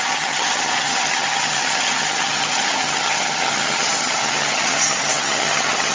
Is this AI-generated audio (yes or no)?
yes